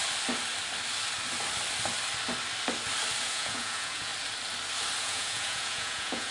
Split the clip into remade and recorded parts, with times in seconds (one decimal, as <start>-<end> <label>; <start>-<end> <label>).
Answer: 0.0-3.2 recorded; 3.2-4.1 remade; 4.1-5.0 recorded; 5.0-6.3 remade